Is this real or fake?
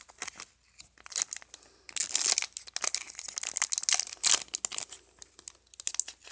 real